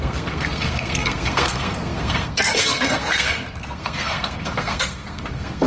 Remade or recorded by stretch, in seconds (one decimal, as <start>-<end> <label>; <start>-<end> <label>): 0.0-5.7 remade